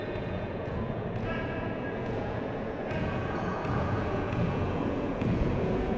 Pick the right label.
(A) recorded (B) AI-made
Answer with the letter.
B